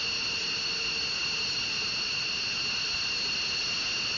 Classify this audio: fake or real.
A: real